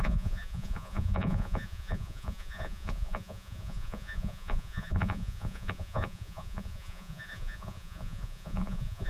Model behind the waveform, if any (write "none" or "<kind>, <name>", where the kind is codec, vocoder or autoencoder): vocoder, Vocos